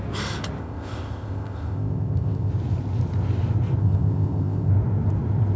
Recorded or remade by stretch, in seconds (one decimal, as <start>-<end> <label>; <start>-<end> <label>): 0.0-0.6 recorded; 0.6-2.5 remade; 2.5-3.8 recorded; 3.8-4.7 remade; 4.7-5.6 recorded